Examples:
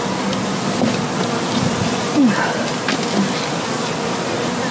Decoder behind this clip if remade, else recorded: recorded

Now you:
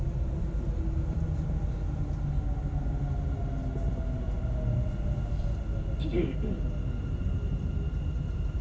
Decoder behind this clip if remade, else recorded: recorded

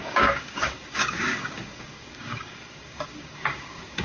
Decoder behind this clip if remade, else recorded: remade, codec, DAC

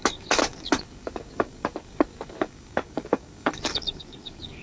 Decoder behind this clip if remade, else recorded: remade, codec, DAC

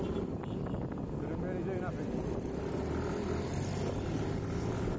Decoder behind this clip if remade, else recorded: recorded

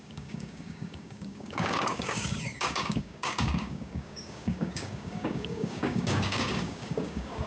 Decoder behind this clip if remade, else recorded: remade, codec, DAC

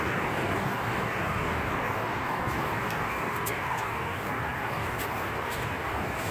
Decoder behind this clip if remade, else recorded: remade, codec, DAC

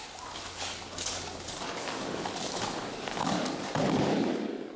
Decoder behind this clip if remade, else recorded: remade, codec, DAC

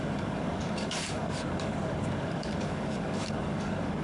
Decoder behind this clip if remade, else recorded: remade, codec, DAC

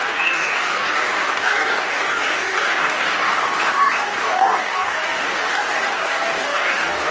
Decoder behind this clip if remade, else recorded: remade, codec, DAC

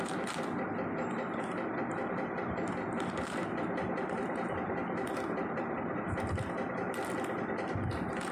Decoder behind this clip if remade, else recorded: recorded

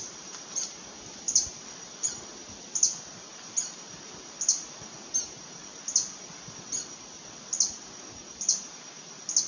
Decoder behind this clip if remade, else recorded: recorded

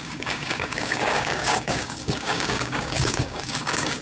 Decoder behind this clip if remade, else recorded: remade, codec, DAC